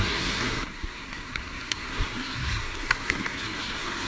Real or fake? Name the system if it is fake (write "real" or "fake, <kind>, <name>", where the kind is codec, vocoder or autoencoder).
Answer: fake, codec, SNAC